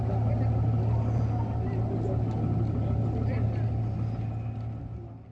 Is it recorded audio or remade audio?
recorded